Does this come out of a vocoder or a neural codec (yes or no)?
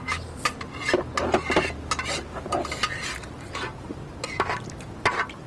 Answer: no